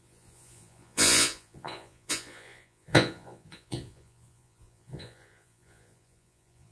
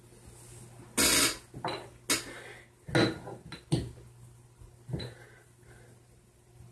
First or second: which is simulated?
first